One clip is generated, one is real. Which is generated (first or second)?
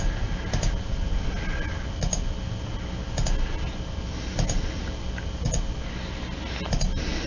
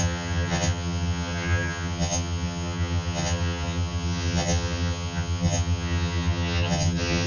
second